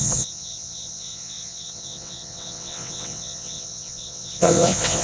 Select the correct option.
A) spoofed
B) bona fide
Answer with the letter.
A